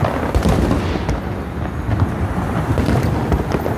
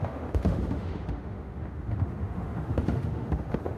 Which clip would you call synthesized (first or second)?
second